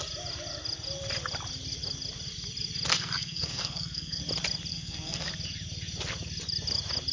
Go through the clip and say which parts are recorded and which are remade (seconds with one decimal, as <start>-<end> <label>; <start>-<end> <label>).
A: 0.0-2.9 recorded; 2.9-4.2 remade; 4.2-4.7 recorded; 4.7-5.3 remade; 5.3-7.1 recorded